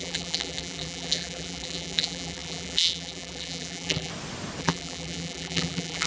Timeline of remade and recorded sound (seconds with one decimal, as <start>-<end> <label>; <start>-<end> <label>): 0.0-4.1 remade; 4.1-4.6 recorded; 4.6-6.1 remade